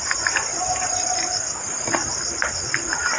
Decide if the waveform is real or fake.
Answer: real